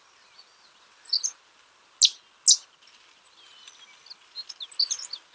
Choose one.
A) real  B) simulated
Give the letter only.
A